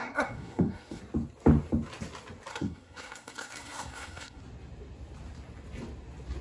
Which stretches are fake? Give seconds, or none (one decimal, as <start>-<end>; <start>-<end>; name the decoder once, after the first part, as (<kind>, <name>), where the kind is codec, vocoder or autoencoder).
0.0-1.0 (codec, SNAC); 2.5-4.4